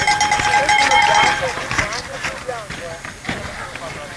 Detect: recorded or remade recorded